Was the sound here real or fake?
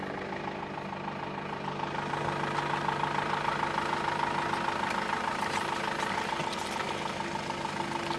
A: real